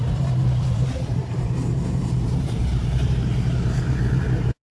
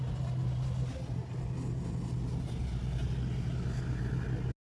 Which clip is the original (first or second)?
second